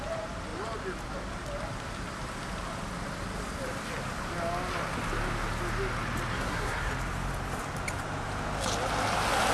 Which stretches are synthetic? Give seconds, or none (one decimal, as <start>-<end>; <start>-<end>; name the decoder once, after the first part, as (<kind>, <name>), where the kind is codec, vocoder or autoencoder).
6.3-6.9 (codec, SNAC)